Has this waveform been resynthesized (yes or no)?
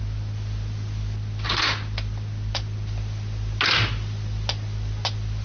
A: no